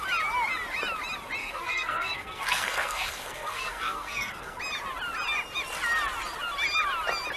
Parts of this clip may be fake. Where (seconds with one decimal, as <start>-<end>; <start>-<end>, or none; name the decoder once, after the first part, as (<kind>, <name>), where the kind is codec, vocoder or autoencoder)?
1.4-4.6 (codec, SNAC)